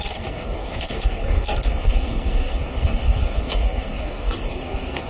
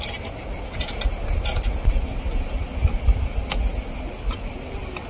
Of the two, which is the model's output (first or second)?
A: first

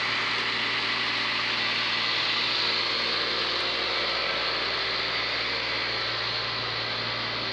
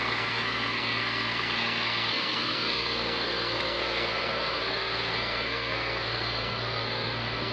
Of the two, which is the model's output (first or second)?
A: second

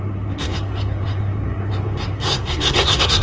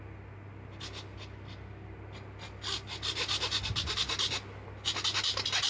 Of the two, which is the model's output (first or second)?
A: first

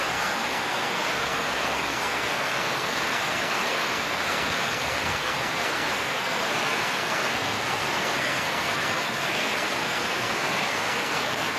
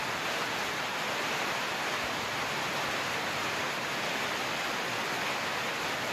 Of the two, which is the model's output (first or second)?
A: first